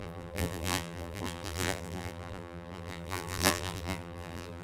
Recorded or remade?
remade